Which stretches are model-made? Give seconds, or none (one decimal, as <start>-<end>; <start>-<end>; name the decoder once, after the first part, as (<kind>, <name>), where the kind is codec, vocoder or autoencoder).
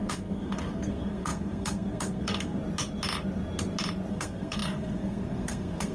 0.0-2.6 (codec, SNAC); 4.1-5.9